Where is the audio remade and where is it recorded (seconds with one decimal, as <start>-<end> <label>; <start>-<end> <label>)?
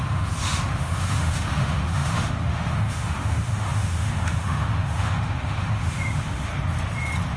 0.0-6.5 remade; 6.5-7.4 recorded